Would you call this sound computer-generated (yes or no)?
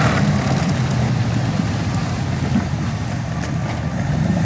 no